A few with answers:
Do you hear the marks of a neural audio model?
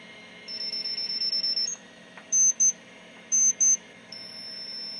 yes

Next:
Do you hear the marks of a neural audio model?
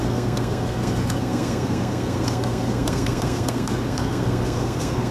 yes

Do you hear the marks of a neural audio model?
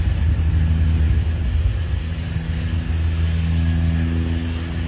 no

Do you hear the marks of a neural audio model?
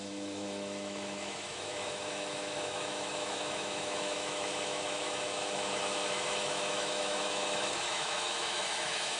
yes